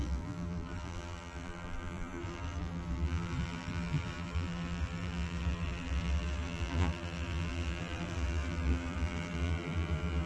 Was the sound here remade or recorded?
remade